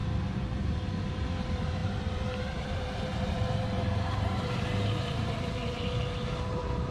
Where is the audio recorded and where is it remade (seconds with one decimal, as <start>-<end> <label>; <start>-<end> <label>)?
0.0-1.1 recorded; 1.1-5.6 remade; 5.6-6.5 recorded; 6.5-6.9 remade